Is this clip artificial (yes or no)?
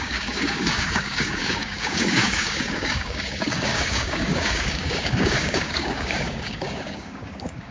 yes